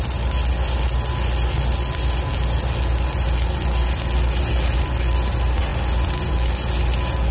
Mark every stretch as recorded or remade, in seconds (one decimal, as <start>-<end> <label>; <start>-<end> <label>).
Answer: 0.0-7.3 recorded